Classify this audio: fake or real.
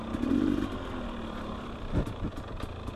real